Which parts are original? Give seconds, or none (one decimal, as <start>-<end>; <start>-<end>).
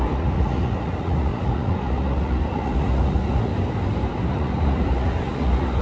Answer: 3.5-4.3